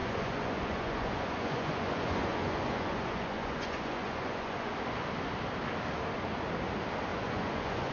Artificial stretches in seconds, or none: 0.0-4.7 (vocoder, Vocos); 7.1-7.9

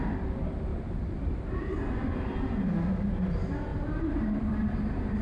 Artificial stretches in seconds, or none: 0.7-2.4 (vocoder, BigVGAN v2); 3.7-5.2

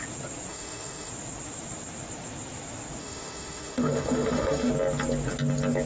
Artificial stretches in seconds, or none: 0.5-1.1 (autoencoder, DAC-VAE); 3.0-4.7

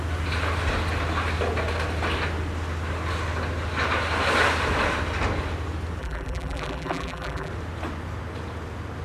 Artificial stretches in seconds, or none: 6.0-7.5 (vocoder, BigVGAN v2)

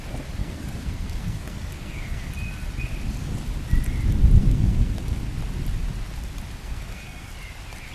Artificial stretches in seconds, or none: 0.4-2.3 (codec, SNAC); 4.4-5.3; 6.6-7.3

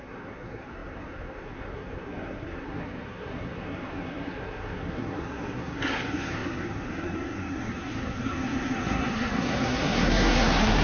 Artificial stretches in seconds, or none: 0.0-10.8 (codec, SNAC)

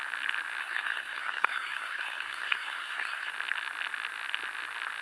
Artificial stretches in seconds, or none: 0.6-3.3 (codec, SNAC)

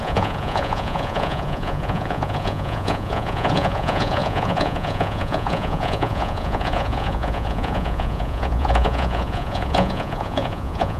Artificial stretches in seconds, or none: 0.0-11.0 (vocoder, Vocos)